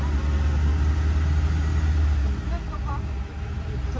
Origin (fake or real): real